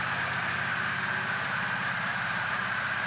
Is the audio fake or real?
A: real